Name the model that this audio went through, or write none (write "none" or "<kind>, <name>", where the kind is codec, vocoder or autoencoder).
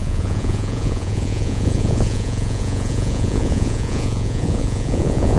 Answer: vocoder, Vocos